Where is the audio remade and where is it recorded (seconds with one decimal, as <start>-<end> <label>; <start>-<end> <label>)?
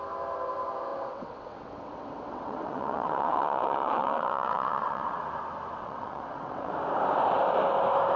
0.0-0.9 recorded; 0.9-5.2 remade; 5.2-5.8 recorded; 5.8-6.7 remade; 6.7-8.2 recorded